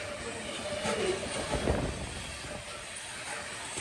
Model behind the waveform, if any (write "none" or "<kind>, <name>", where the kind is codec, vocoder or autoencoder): none